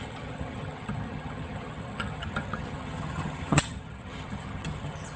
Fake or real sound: fake